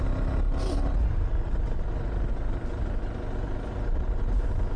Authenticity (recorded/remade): recorded